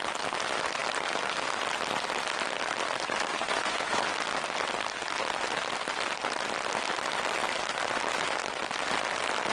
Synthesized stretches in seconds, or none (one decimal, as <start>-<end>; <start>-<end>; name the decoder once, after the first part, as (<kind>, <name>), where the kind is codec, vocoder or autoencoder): 3.3-4.0 (vocoder, Vocos)